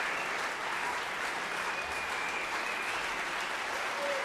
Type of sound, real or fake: real